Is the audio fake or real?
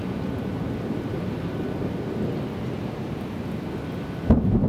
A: real